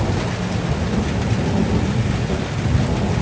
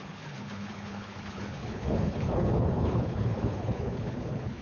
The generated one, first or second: second